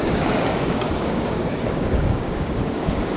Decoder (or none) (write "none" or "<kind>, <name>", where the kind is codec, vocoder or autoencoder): codec, DAC